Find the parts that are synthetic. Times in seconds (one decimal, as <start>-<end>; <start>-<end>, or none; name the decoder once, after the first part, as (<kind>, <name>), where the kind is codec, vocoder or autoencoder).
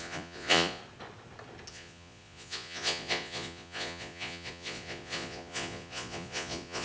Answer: 0.0-0.8 (vocoder, Vocos); 1.7-6.8